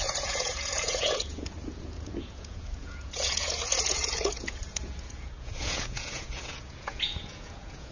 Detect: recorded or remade remade